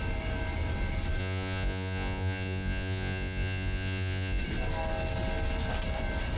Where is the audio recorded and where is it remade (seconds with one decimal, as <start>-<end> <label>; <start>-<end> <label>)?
0.0-1.2 recorded; 1.2-4.4 remade; 4.4-6.4 recorded